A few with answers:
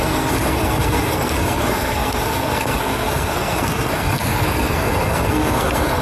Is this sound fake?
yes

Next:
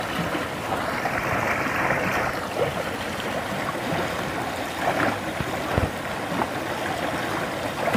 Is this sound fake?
no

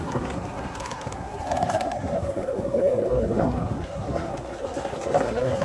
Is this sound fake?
yes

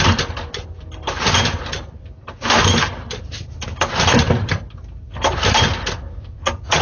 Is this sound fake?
yes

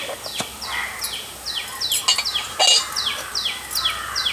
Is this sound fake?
no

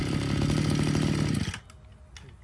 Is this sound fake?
no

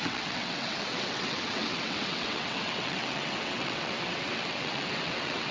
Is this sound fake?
yes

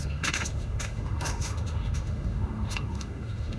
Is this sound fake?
yes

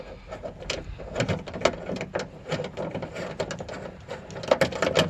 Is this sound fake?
no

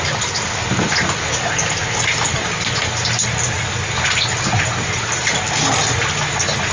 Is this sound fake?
no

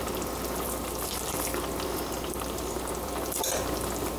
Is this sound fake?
yes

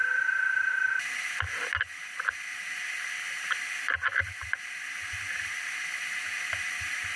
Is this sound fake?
no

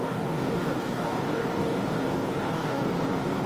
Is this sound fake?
yes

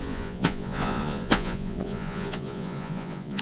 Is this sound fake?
yes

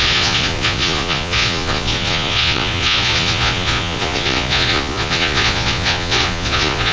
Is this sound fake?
yes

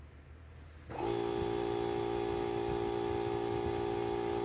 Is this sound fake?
no